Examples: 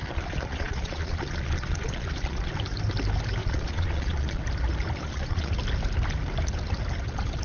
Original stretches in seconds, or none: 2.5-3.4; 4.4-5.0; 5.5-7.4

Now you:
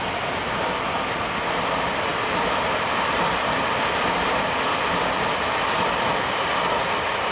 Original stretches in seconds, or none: 0.0-7.3